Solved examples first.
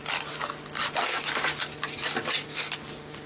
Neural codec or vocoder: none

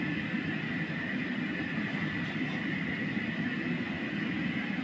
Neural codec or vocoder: none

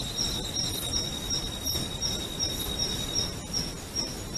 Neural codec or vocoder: none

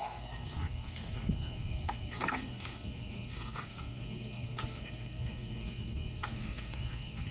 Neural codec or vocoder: codec, SNAC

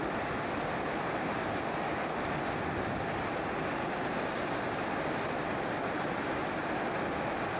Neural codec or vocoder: none